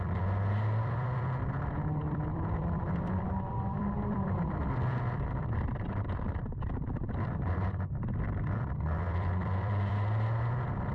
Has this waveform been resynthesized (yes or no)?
yes